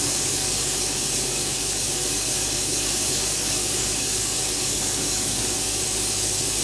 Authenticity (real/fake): fake